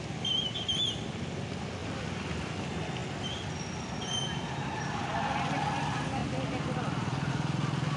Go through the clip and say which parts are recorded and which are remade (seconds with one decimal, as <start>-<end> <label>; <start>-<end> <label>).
0.0-1.8 recorded; 1.8-2.5 remade; 2.5-8.0 recorded